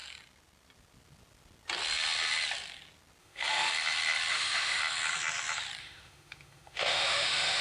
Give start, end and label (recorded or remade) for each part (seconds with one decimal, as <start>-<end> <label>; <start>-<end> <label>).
0.0-3.2 recorded; 3.2-3.7 remade; 3.7-4.3 recorded; 4.3-4.8 remade; 4.8-5.8 recorded; 5.8-7.6 remade